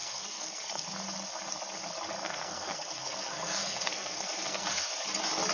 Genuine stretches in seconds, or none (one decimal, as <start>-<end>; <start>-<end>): 0.9-2.2; 4.9-5.5